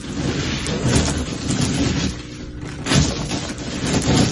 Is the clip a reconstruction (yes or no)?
no